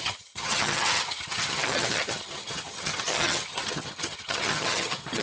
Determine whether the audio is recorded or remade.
remade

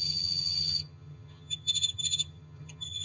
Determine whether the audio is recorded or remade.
remade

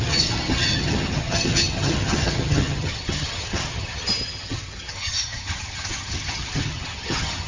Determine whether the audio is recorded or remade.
remade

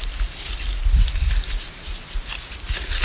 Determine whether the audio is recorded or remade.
recorded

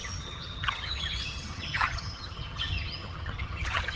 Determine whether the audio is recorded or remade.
remade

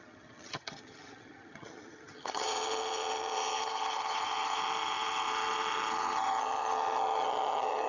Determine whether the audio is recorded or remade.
remade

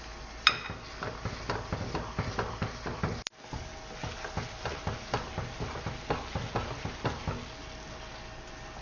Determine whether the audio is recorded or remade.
recorded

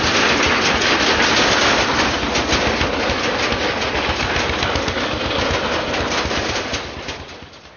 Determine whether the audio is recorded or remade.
recorded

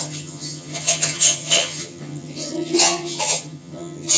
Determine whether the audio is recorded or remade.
remade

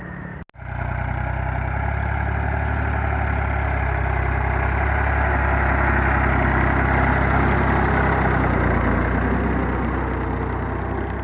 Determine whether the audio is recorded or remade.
recorded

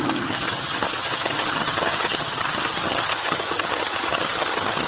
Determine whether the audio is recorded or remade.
remade